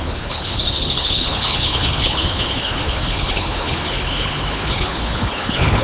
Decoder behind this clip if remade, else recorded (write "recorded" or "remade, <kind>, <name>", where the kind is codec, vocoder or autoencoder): remade, codec, HILCodec